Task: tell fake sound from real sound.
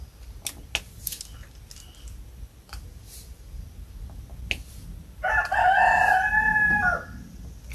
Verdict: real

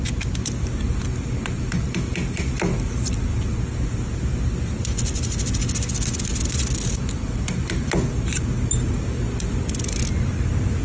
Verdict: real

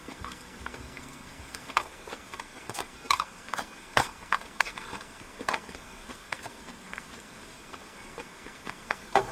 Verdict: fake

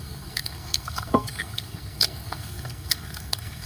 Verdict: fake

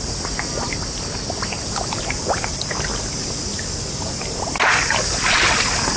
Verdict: real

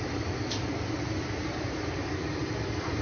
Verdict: real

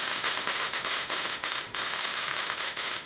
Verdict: fake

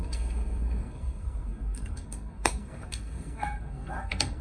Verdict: fake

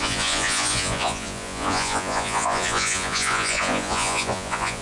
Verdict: fake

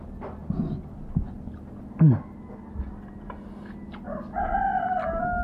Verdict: real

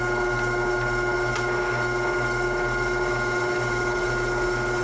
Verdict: real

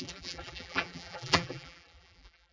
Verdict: fake